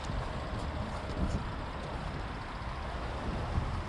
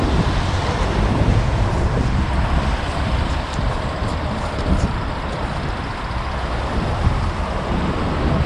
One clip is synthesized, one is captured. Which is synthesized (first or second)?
second